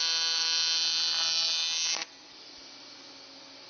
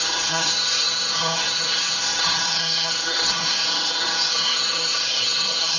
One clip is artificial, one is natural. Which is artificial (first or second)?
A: second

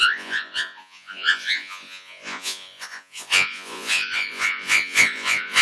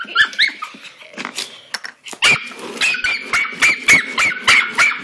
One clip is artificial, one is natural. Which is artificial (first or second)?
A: first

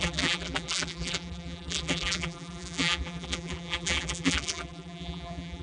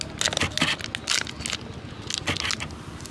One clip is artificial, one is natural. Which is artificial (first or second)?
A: first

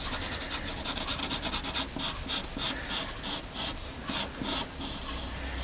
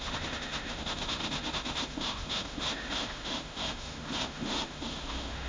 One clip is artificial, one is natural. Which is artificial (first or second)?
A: second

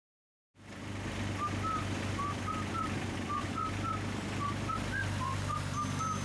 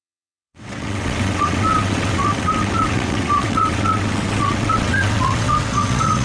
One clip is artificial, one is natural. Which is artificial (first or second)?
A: second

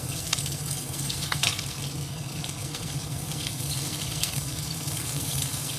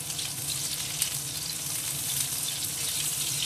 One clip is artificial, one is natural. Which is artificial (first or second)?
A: first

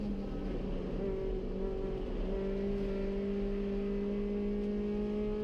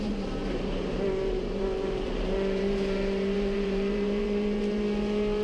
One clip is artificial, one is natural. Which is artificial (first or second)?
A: second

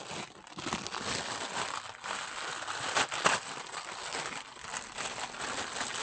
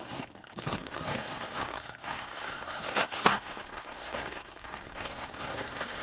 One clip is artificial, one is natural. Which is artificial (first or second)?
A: second